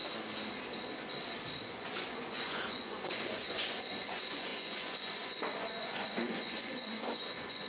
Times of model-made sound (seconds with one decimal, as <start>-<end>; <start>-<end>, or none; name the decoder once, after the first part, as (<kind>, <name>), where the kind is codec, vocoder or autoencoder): 1.7-7.7 (vocoder, Vocos)